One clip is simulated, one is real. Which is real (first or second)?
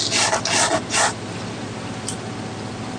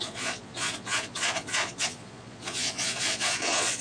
first